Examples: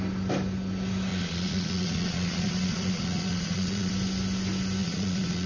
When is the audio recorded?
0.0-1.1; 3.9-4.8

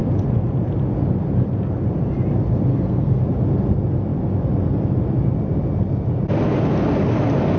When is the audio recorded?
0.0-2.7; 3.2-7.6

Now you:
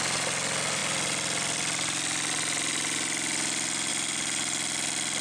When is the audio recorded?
0.0-5.2